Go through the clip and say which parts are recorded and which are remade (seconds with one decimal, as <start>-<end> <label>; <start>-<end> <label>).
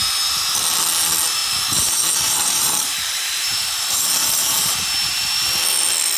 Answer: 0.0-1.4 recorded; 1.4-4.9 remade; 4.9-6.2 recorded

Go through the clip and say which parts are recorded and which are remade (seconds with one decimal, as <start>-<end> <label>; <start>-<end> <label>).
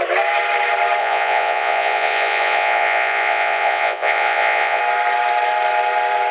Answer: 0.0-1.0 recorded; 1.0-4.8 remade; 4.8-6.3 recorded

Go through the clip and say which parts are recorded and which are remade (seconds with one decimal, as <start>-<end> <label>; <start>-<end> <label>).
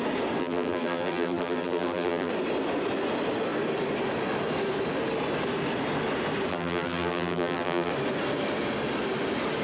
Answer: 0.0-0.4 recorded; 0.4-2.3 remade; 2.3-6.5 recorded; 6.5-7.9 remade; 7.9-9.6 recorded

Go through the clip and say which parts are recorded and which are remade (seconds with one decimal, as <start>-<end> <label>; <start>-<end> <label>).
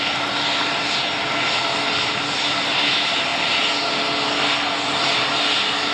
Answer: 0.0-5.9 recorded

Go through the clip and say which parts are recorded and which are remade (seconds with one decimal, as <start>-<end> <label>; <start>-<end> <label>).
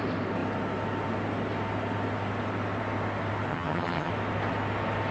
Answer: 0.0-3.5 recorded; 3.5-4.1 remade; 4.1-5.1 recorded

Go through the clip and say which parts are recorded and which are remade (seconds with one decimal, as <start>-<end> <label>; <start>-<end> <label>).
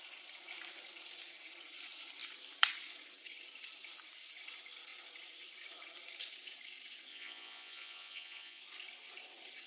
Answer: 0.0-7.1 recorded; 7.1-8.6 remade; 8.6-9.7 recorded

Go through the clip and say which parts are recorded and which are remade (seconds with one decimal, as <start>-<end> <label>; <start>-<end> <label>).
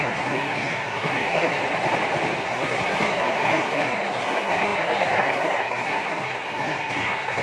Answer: 0.0-1.6 remade; 1.6-2.4 recorded; 2.4-7.4 remade